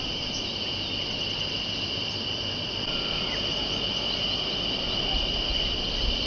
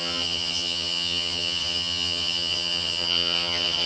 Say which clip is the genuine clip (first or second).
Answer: first